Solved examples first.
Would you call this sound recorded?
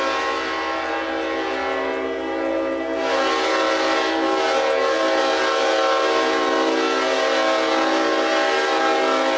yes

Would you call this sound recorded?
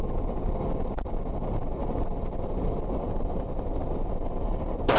yes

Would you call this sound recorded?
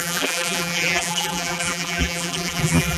no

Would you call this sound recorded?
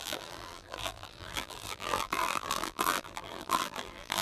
no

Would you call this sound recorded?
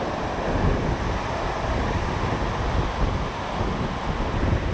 yes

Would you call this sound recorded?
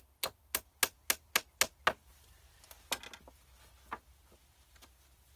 yes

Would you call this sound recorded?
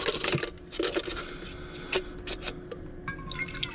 yes